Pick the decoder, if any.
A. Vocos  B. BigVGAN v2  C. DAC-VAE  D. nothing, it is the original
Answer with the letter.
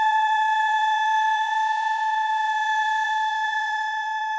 A